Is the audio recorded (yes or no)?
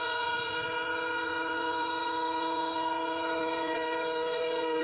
no